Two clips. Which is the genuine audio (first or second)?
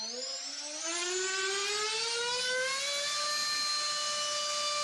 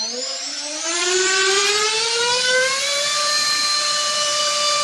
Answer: first